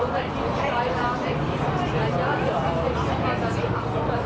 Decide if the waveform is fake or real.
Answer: real